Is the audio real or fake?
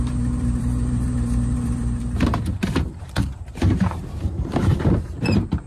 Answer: fake